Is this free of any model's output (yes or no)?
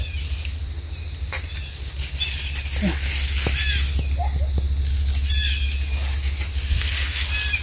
yes